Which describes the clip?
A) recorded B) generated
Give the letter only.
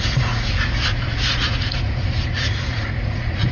B